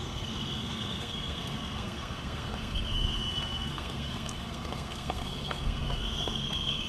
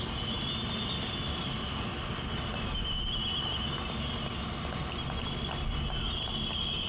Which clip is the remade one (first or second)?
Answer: first